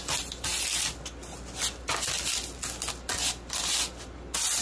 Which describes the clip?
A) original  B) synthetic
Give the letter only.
A